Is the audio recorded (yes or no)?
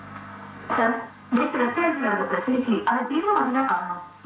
no